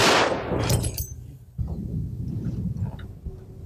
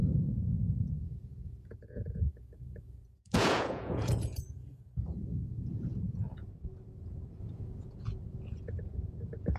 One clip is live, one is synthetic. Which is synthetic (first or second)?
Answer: second